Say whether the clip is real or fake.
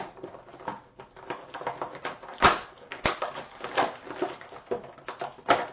real